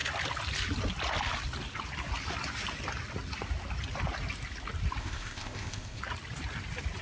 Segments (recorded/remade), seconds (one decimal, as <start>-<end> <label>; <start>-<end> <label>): 0.0-5.0 recorded; 5.0-6.0 remade; 6.0-7.0 recorded